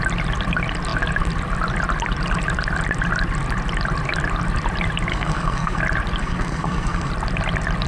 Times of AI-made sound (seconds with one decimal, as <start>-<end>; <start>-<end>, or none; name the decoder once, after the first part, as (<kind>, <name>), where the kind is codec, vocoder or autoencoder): 5.1-5.8 (codec, SNAC); 6.2-7.1